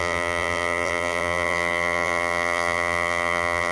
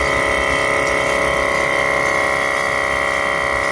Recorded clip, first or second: second